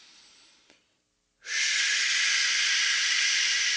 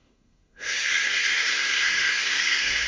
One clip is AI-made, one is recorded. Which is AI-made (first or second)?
second